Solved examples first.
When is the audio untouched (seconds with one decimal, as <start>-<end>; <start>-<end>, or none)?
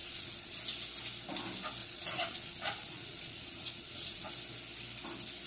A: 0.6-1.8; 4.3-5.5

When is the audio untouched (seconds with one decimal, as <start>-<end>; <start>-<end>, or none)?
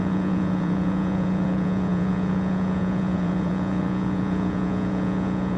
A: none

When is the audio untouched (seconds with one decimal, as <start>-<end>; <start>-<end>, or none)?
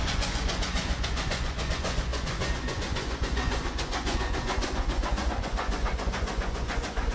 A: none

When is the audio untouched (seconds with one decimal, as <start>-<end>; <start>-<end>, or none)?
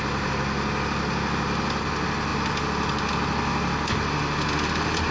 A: 0.0-5.1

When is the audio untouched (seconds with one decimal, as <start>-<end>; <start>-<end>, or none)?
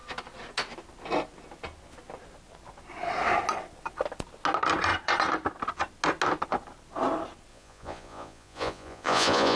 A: 0.0-7.5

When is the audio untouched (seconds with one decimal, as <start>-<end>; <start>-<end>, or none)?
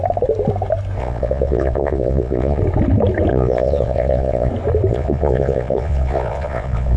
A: 0.0-1.0; 2.6-3.3; 4.5-4.9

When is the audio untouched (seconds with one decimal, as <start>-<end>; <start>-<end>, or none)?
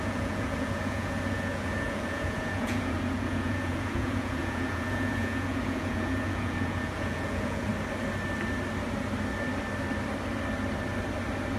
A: 7.7-11.6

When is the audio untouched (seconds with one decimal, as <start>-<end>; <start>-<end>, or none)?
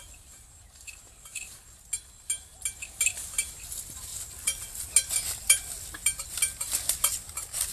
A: 0.0-7.7